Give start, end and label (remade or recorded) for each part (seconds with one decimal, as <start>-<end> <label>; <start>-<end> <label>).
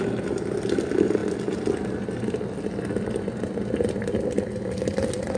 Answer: 0.0-5.4 recorded